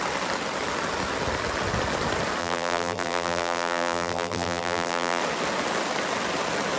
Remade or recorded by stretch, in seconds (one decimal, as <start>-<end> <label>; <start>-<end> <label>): 0.0-2.4 recorded; 2.4-5.2 remade; 5.2-6.8 recorded

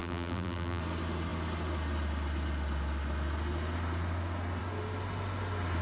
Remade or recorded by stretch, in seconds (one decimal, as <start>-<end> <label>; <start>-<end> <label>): 0.0-0.8 remade; 0.8-5.8 recorded

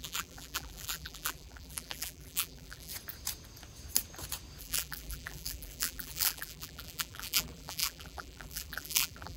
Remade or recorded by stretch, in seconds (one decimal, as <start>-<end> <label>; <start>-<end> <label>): 0.0-2.9 remade; 2.9-4.6 recorded; 4.6-9.4 remade

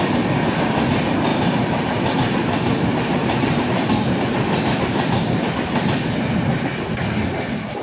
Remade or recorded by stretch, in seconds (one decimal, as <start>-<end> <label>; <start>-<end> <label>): 0.0-1.3 recorded; 1.3-6.0 remade; 6.0-7.8 recorded

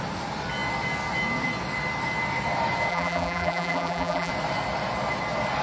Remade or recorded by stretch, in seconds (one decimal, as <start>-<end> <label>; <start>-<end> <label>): 0.0-2.9 recorded; 2.9-4.3 remade; 4.3-5.6 recorded